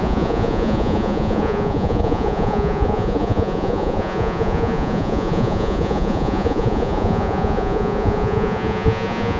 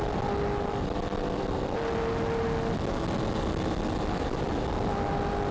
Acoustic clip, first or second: second